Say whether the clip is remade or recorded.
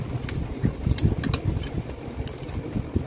recorded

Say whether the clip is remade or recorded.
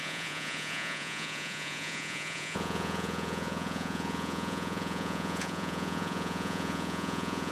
remade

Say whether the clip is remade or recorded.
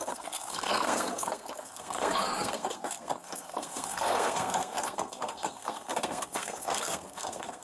remade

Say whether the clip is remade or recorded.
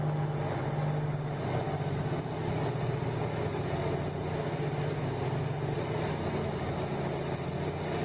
recorded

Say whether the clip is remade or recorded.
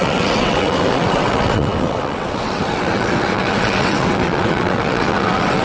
remade